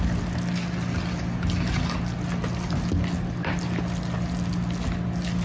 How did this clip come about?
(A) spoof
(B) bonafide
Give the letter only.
B